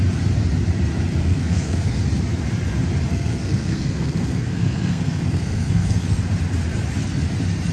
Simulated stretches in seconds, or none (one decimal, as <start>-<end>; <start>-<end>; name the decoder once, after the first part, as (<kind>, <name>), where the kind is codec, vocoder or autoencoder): 1.2-2.0 (codec, SNAC); 3.1-6.2